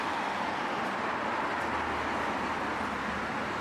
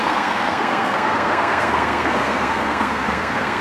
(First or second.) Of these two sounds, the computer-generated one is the second